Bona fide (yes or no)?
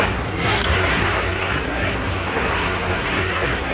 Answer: no